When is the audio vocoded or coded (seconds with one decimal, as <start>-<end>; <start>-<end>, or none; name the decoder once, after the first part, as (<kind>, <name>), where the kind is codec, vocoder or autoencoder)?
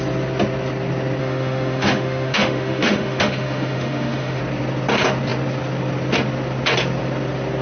1.2-4.4 (autoencoder, DAC-VAE)